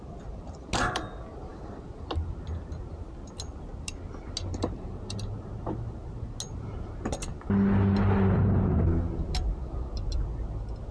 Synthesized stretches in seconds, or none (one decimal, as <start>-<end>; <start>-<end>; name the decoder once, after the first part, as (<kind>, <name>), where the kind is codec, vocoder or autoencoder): none